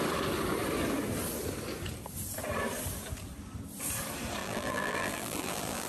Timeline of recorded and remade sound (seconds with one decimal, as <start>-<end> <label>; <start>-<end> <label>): 0.0-4.4 recorded; 4.4-5.9 remade